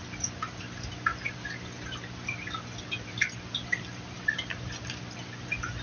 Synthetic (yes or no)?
no